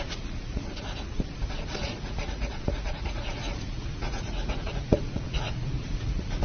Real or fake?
fake